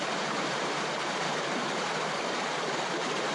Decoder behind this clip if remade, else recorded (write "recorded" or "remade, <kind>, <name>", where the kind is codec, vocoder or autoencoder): remade, vocoder, BigVGAN v2